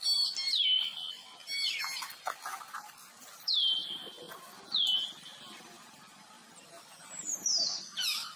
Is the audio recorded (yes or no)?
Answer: yes